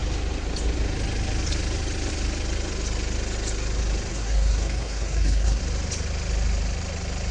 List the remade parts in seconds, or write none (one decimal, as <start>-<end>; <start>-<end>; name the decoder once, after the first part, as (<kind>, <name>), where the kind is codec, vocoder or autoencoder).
4.1-5.6 (codec, SNAC)